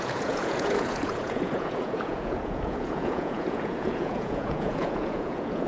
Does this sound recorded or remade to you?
remade